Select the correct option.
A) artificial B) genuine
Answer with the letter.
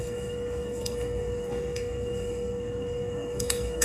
A